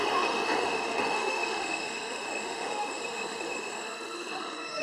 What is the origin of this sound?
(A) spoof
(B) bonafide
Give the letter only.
A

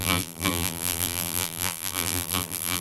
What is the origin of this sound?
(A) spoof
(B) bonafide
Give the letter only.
A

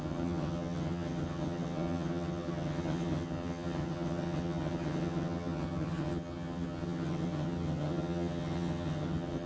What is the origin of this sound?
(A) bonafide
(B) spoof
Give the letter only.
B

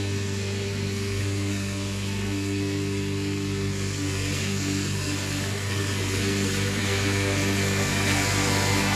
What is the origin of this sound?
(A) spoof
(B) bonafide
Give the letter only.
A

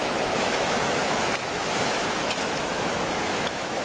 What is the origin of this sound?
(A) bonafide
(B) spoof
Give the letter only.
B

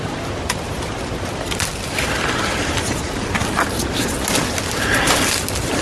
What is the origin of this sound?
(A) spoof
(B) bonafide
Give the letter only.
B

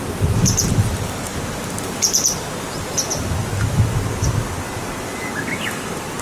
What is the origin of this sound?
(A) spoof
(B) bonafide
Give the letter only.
A